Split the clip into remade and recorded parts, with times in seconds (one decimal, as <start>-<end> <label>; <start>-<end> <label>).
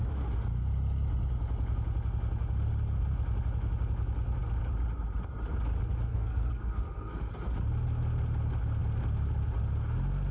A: 0.0-6.1 recorded; 6.1-7.3 remade; 7.3-10.3 recorded